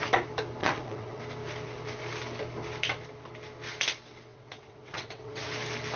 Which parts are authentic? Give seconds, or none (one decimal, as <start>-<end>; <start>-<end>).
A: 0.0-0.6; 1.2-4.3; 5.4-6.0